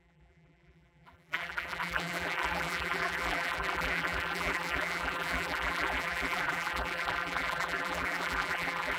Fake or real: fake